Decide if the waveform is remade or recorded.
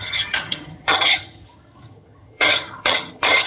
remade